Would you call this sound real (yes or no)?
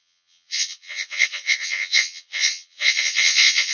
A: no